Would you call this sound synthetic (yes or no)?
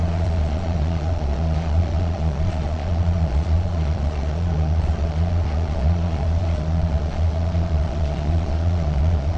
yes